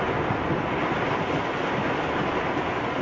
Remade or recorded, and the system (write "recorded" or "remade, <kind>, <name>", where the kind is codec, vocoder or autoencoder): recorded